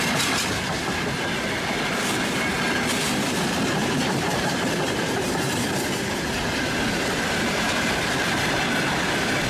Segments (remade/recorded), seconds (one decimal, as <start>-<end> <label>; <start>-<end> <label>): 0.0-3.8 recorded; 3.8-5.6 remade; 5.6-9.5 recorded